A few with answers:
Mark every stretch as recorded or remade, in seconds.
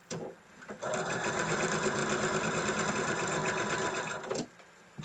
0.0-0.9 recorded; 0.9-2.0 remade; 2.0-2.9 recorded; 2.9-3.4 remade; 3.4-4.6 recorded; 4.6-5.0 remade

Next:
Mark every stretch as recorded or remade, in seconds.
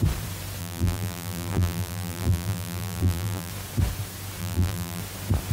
0.0-0.6 recorded; 0.6-3.5 remade; 3.5-4.4 recorded; 4.4-5.0 remade; 5.0-5.5 recorded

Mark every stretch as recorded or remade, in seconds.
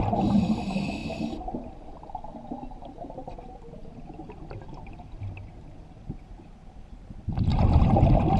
0.0-1.0 recorded; 1.0-2.0 remade; 2.0-3.8 recorded; 3.8-6.3 remade; 6.3-7.5 recorded; 7.5-8.4 remade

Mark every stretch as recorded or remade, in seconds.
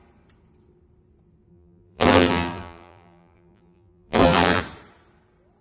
0.0-1.5 recorded; 1.5-4.6 remade; 4.6-5.6 recorded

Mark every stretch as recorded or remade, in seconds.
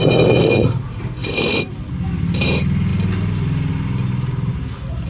0.0-1.2 recorded; 1.2-1.9 remade; 1.9-5.1 recorded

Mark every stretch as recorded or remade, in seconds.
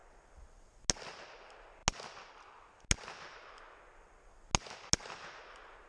0.0-5.9 recorded